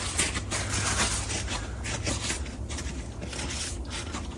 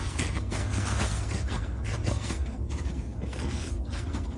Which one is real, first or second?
first